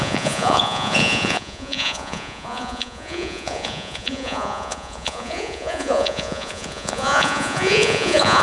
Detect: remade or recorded remade